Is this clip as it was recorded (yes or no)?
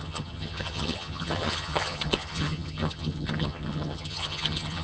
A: no